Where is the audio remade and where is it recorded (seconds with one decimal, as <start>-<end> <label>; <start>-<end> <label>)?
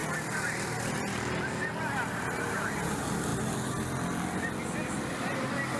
0.0-5.8 recorded